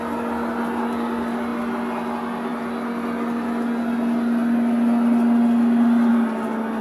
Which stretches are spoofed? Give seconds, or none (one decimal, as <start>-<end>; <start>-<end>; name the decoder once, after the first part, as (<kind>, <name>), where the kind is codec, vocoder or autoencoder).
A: none